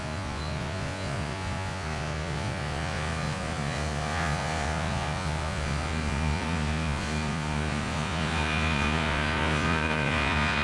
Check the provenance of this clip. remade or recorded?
remade